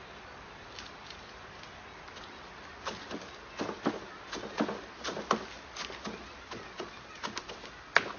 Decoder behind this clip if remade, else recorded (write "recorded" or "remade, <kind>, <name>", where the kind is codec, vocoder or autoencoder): recorded